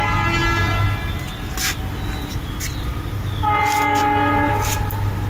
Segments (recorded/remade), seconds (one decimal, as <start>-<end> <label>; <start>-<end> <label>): 0.0-5.3 recorded

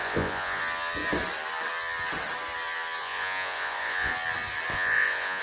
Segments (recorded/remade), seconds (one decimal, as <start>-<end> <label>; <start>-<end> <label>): 0.0-0.6 remade; 0.6-3.0 recorded; 3.0-4.1 remade; 4.1-4.7 recorded; 4.7-5.4 remade

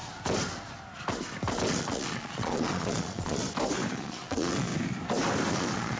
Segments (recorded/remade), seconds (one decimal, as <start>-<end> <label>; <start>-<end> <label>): 0.0-1.7 recorded; 1.7-3.4 remade; 3.4-3.9 recorded; 3.9-4.7 remade; 4.7-5.5 recorded; 5.5-6.0 remade

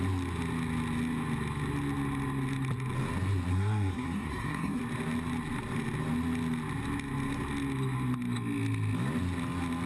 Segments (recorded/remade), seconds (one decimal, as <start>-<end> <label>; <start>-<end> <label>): 0.0-3.5 recorded; 3.5-4.8 remade; 4.8-9.9 recorded

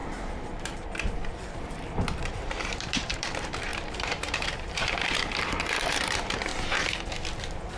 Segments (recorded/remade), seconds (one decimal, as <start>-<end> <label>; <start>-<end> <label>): 0.0-6.5 remade; 6.5-7.8 recorded

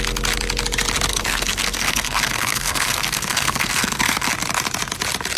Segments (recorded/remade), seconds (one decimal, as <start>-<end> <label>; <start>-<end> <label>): 0.0-1.1 recorded; 1.1-4.3 remade; 4.3-5.4 recorded